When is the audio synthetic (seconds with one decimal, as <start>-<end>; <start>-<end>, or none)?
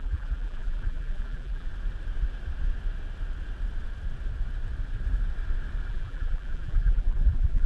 0.0-1.7; 5.9-7.7